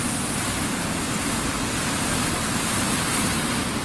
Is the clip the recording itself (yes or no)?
yes